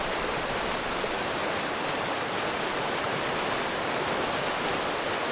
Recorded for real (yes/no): yes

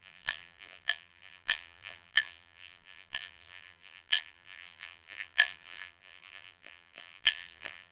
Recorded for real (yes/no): no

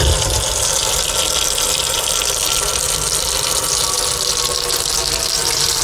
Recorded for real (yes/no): yes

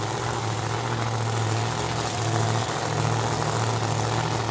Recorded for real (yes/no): yes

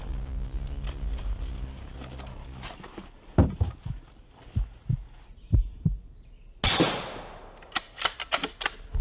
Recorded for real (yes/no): yes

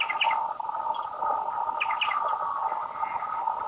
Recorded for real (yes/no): yes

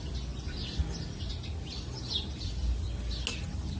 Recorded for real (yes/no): yes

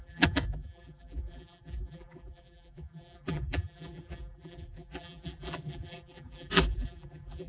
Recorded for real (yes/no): no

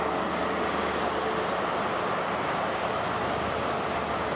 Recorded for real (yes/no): yes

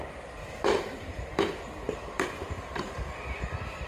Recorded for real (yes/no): no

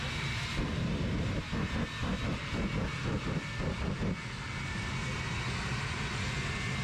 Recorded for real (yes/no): yes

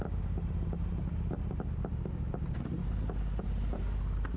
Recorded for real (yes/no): yes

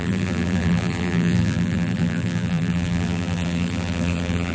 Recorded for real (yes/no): no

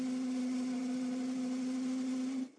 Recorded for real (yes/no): yes